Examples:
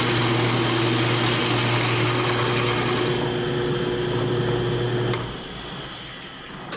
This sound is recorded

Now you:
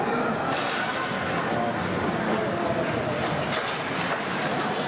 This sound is recorded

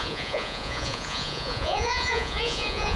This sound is remade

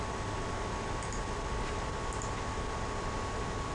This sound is recorded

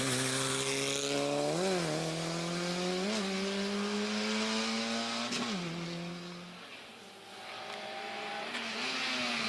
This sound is recorded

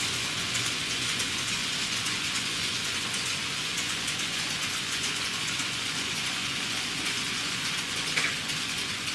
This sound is remade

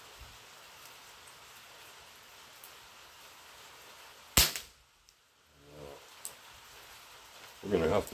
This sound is recorded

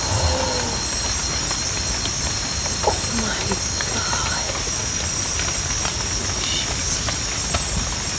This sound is recorded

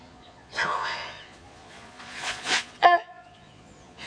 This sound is remade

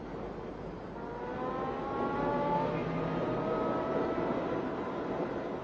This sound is recorded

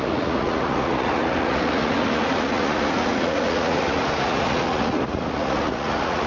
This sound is remade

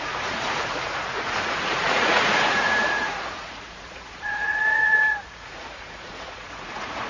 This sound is remade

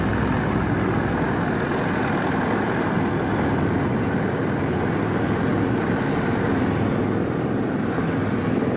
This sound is recorded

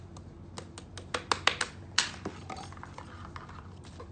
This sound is recorded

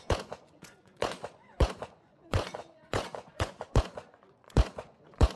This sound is remade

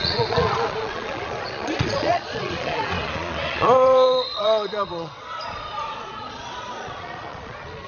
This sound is remade